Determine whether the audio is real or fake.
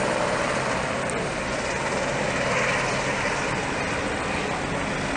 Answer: real